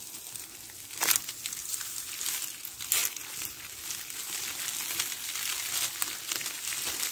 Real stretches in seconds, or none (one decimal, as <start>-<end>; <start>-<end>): 0.0-1.6; 2.2-3.0; 3.7-7.1